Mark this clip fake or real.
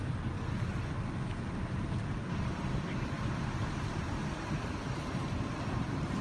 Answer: real